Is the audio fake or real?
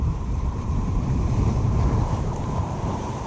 fake